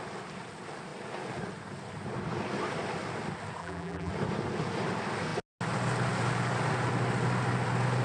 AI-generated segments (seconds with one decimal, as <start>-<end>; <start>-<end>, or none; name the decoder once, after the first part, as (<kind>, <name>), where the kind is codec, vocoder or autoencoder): 3.6-4.1 (vocoder, BigVGAN v2)